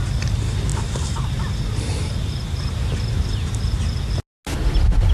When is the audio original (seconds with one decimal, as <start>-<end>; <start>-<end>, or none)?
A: 0.0-0.7; 3.8-5.1